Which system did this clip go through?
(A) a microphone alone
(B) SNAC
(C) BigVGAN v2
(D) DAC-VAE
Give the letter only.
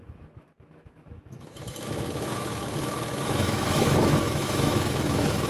D